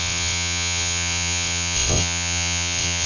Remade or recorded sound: remade